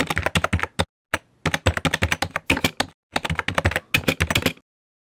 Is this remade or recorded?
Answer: recorded